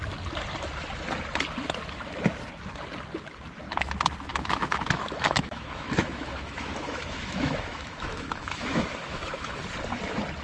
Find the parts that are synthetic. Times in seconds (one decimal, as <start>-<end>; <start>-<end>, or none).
4.3-9.6